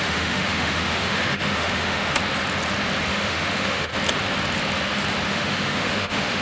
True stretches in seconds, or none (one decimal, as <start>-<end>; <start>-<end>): 2.2-3.1; 3.9-5.3